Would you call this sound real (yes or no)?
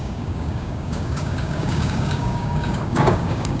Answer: no